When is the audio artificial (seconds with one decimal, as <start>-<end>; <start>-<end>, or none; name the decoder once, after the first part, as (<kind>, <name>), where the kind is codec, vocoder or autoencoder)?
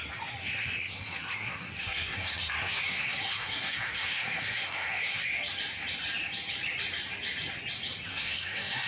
0.4-5.3 (codec, SNAC); 8.1-8.9